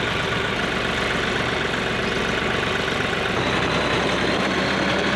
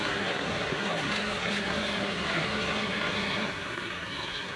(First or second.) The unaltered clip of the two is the first